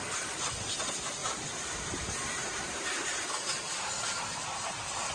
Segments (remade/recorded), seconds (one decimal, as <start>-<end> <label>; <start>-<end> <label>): 0.0-1.2 recorded; 1.2-3.1 remade; 3.1-5.1 recorded